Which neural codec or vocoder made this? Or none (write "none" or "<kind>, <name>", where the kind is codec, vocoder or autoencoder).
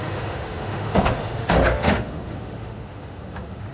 autoencoder, DAC-VAE